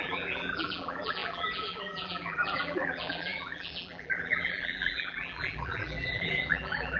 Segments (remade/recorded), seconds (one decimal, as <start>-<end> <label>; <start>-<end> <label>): 0.0-7.0 remade